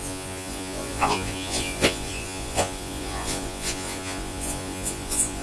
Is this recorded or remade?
remade